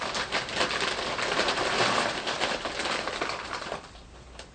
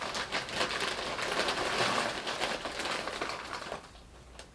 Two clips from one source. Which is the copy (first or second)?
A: first